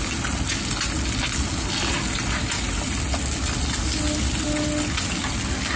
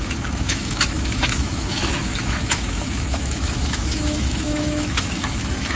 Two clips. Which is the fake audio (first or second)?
second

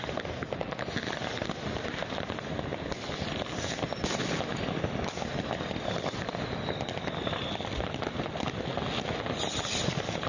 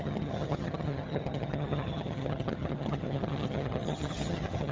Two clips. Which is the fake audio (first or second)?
second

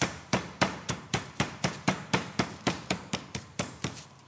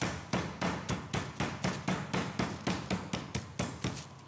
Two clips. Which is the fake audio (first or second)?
first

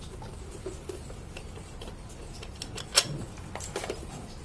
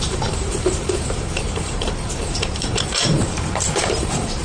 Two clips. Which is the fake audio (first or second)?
second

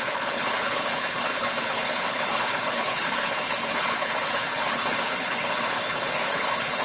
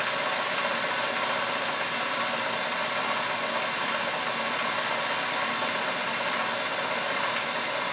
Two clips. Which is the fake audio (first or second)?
first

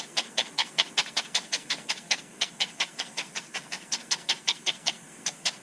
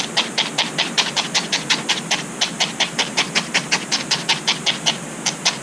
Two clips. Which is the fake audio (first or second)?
first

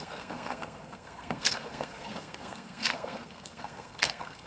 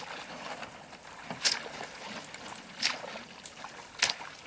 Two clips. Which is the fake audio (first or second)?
first